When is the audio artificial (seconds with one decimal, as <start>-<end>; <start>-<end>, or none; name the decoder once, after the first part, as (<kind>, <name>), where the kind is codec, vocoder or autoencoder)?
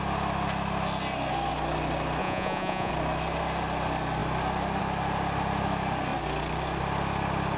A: 2.2-2.9 (vocoder, Vocos)